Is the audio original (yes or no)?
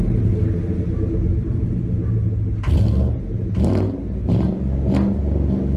yes